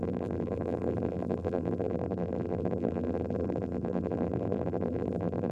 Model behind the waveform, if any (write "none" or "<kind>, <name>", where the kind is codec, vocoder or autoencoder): vocoder, BigVGAN v2